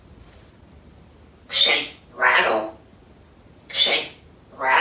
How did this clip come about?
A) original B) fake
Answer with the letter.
A